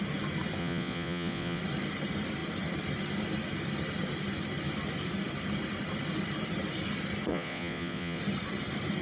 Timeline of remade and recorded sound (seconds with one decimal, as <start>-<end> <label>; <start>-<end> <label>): 0.0-0.6 recorded; 0.6-1.6 remade; 1.6-7.3 recorded; 7.3-8.2 remade; 8.2-9.0 recorded